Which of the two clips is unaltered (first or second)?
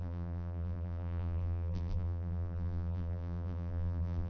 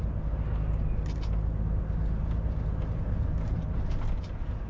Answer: second